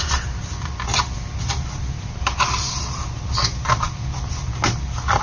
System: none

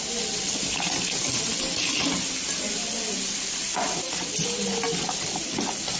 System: none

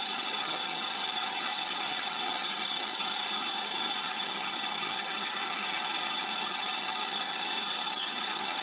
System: vocoder, HiFi-GAN